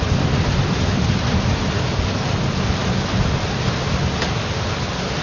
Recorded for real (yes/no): yes